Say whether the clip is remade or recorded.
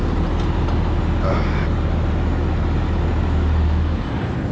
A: recorded